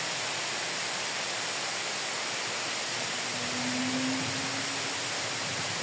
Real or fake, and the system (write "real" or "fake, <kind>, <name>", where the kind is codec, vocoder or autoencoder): real